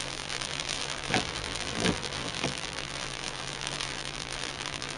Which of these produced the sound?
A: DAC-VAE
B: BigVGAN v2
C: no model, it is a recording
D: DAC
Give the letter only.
B